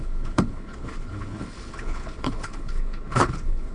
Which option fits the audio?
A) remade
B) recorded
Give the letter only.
A